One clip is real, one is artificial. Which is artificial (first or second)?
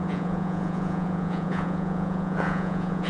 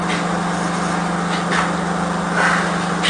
first